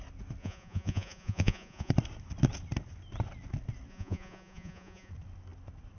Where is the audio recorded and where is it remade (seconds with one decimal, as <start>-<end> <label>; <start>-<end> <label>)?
0.0-0.4 recorded; 0.4-1.9 remade; 1.9-3.9 recorded; 3.9-5.1 remade; 5.1-6.0 recorded